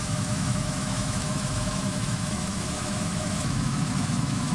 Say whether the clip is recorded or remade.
remade